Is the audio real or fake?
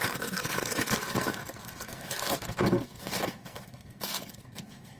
fake